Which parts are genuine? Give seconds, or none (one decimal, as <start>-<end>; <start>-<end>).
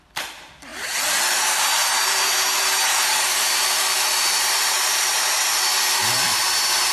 0.7-3.5; 5.1-6.0